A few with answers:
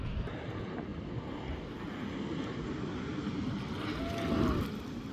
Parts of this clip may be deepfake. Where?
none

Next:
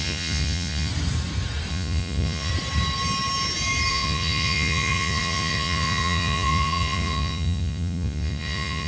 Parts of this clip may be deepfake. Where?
0.0-0.9 (vocoder, Vocos); 1.7-2.5; 3.9-8.9

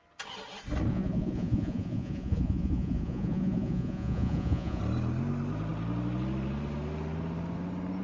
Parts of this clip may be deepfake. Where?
0.9-4.8 (vocoder, Vocos)